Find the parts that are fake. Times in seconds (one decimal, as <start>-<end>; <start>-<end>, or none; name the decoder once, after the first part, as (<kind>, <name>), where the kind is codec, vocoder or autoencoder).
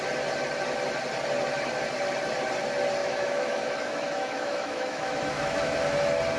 3.0-5.8 (autoencoder, DAC-VAE)